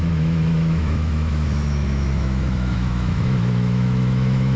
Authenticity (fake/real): fake